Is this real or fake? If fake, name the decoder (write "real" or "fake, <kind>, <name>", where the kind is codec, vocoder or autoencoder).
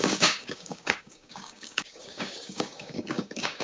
fake, codec, DAC